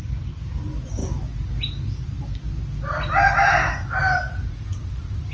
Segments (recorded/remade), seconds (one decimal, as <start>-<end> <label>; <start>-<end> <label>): 0.0-5.3 recorded